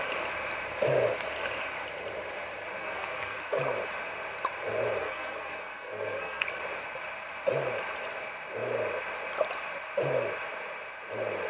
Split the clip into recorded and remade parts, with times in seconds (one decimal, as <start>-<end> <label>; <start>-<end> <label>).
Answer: 0.0-2.8 recorded; 2.8-3.6 remade; 3.6-5.0 recorded; 5.0-6.6 remade; 6.6-11.5 recorded